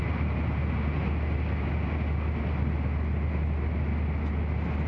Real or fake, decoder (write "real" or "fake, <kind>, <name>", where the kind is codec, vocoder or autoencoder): real